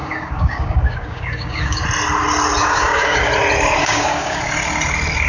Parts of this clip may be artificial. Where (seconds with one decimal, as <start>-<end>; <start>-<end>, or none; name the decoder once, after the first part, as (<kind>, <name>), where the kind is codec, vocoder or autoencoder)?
0.0-1.8 (codec, DAC); 2.6-3.3; 3.8-4.4